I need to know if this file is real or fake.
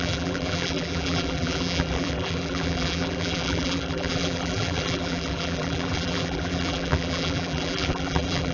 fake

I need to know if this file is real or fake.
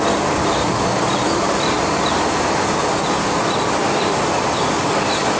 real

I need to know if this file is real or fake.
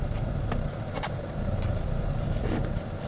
fake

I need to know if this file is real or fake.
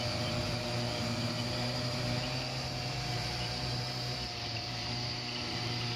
fake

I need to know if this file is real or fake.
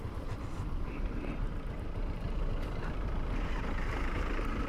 fake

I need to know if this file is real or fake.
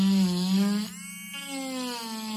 real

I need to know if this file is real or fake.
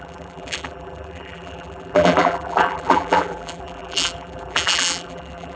fake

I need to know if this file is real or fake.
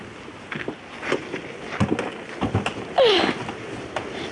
real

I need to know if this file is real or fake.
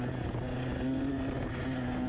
real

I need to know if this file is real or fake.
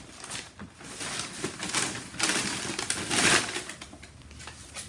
real